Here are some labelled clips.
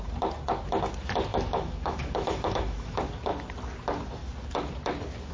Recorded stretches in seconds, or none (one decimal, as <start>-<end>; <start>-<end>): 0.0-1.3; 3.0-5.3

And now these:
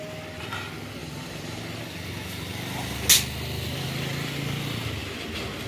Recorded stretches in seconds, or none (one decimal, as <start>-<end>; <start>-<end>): 0.0-1.0; 1.6-5.7

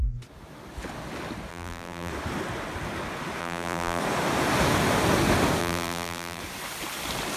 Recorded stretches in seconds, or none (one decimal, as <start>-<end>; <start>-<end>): 0.0-1.5; 2.1-3.4; 4.0-5.6; 6.4-7.4